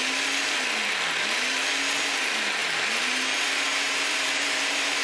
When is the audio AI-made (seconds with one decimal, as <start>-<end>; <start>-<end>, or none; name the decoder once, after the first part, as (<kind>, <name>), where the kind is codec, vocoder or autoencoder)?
2.6-5.0 (vocoder, BigVGAN v2)